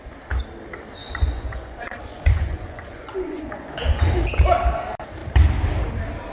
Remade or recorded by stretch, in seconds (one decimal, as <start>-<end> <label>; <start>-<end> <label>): 0.0-1.0 recorded; 1.0-4.1 remade; 4.1-6.3 recorded